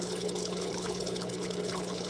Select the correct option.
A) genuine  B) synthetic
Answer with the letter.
B